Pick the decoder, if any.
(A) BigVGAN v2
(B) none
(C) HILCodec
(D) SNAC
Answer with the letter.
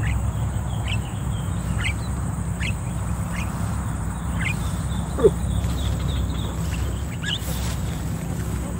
A